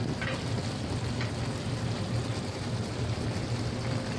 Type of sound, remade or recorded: recorded